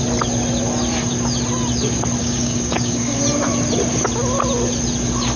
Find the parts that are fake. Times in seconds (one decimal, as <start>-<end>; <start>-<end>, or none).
2.2-3.2